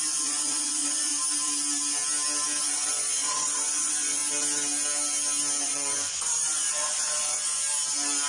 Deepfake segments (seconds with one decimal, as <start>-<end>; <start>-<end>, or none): 0.0-1.1; 2.6-4.2; 5.6-7.6